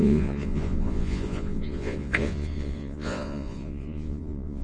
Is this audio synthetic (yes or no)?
yes